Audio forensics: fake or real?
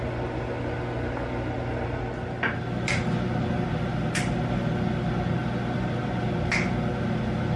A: real